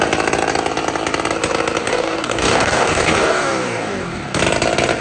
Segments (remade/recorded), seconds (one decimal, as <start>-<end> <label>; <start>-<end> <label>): 0.0-1.8 recorded; 1.8-4.4 remade; 4.4-5.0 recorded